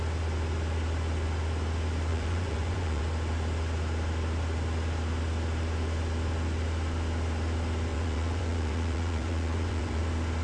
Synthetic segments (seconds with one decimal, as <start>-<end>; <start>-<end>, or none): 2.1-3.0; 7.9-10.0